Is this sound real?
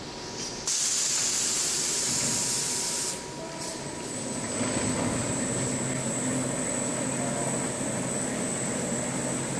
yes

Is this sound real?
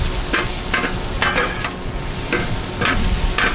yes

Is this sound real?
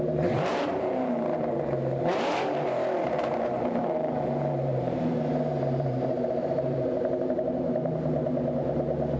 no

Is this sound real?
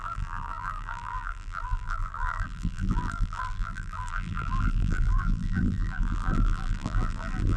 no